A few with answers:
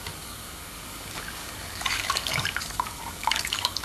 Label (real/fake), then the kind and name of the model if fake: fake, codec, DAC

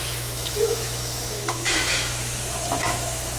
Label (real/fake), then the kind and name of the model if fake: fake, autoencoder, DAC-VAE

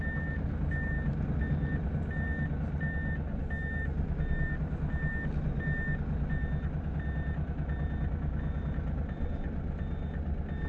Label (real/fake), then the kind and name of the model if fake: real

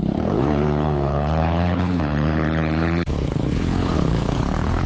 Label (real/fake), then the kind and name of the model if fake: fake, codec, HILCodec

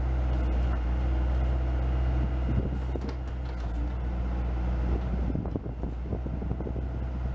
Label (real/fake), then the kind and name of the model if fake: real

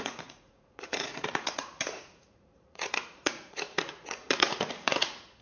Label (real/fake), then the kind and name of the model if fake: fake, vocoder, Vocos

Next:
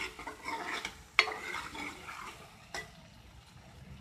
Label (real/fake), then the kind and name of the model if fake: real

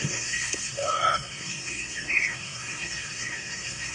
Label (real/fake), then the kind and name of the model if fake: fake, codec, SNAC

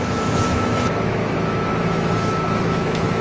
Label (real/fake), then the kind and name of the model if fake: fake, autoencoder, DAC-VAE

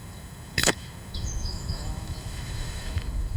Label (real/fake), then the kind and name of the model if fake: fake, autoencoder, DAC-VAE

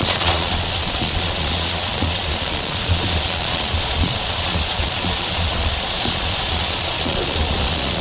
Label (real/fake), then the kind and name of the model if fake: fake, vocoder, Vocos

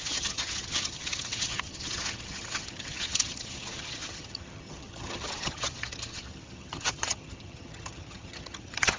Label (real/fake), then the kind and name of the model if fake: fake, vocoder, HiFi-GAN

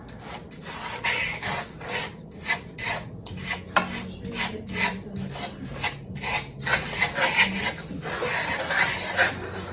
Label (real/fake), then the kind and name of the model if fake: real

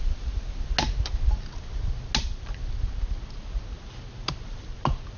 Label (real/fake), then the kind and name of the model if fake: real